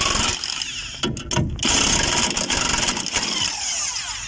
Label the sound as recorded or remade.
recorded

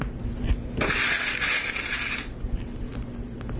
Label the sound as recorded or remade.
recorded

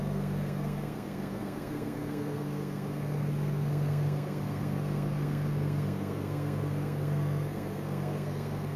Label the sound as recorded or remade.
remade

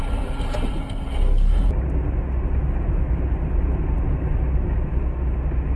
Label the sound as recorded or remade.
recorded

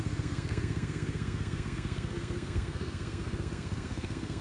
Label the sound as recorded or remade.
remade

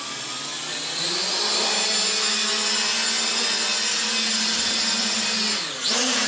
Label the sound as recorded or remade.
recorded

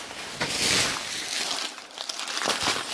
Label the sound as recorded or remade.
recorded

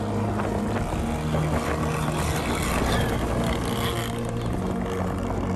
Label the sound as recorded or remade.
recorded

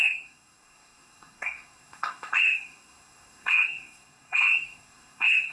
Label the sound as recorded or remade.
remade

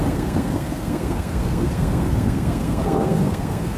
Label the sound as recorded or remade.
remade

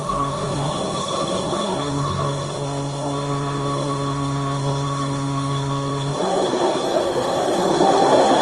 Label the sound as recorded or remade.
remade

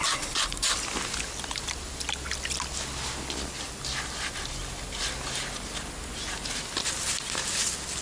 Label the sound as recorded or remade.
recorded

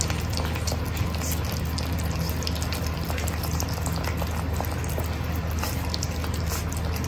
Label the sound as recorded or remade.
recorded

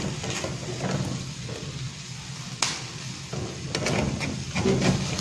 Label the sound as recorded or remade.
recorded